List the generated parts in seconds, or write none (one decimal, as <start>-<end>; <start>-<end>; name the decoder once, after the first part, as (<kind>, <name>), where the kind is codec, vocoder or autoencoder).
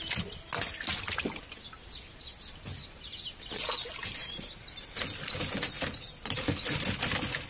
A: none